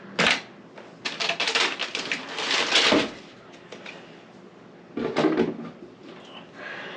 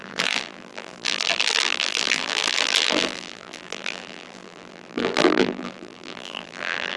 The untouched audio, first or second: first